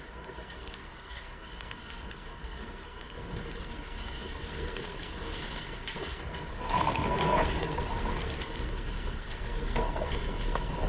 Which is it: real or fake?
fake